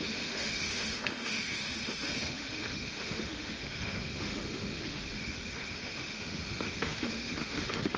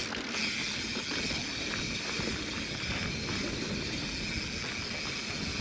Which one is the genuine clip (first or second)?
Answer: second